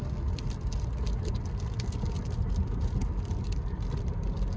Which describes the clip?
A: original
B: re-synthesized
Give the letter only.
A